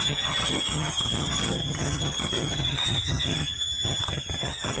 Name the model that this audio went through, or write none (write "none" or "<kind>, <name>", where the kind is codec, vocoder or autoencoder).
vocoder, HiFi-GAN